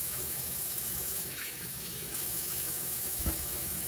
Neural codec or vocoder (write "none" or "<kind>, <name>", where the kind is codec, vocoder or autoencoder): autoencoder, DAC-VAE